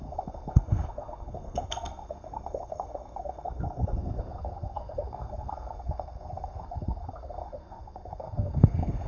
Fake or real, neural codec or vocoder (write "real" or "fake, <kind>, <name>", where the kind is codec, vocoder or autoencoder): fake, codec, SNAC